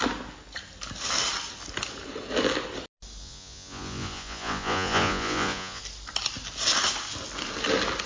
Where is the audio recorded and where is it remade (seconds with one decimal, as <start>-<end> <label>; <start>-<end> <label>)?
0.0-3.2 recorded; 3.2-5.8 remade; 5.8-8.1 recorded